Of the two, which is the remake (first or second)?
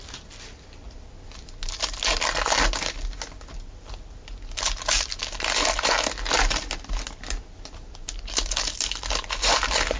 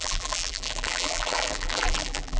second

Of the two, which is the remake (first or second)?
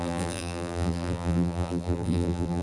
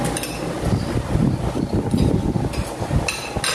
first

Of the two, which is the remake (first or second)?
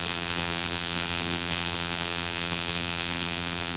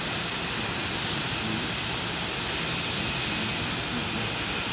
first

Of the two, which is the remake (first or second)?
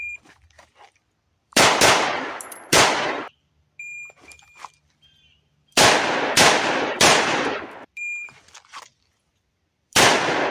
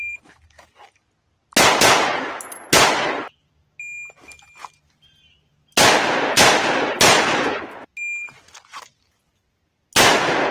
first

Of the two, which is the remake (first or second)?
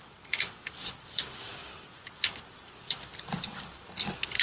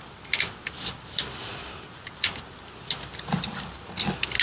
first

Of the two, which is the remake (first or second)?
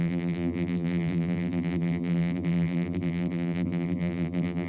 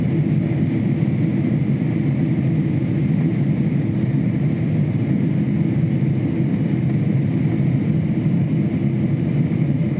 first